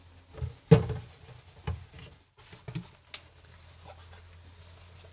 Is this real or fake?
real